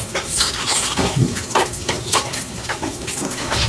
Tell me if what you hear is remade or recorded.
remade